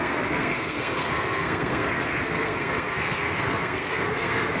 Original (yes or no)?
no